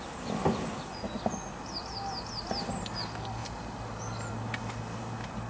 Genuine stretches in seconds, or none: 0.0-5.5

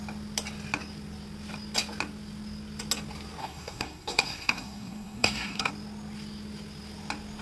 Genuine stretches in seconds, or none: 0.0-3.4; 5.7-7.4

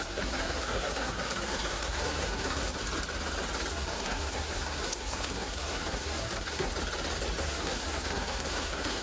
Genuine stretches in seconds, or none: 2.8-3.7; 6.7-7.4